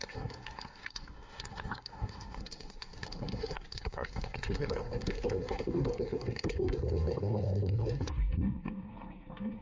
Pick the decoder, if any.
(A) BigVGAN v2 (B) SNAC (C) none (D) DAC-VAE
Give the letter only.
B